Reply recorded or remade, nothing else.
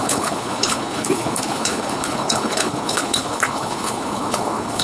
remade